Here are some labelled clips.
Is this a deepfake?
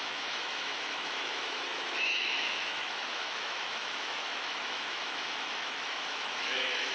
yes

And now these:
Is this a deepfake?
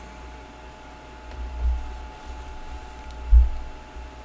no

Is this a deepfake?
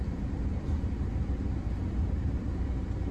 yes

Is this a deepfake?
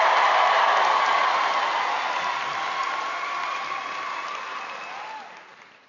no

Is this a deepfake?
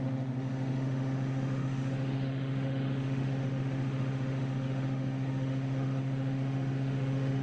yes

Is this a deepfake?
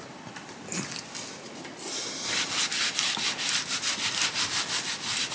no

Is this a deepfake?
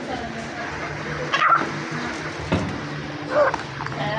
no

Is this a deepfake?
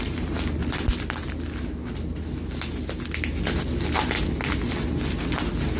no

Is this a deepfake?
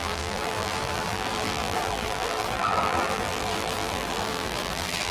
yes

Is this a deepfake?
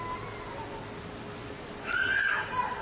no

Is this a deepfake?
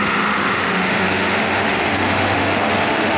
yes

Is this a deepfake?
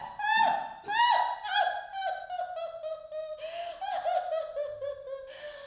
no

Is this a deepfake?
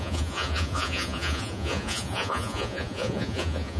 yes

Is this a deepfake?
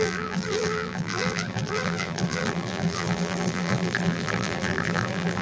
yes